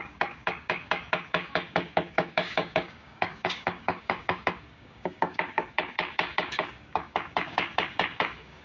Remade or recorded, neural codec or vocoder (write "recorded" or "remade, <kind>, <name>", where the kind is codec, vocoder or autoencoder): remade, codec, DAC